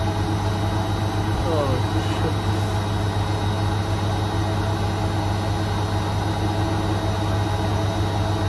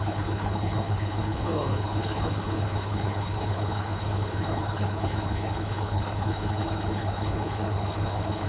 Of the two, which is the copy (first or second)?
second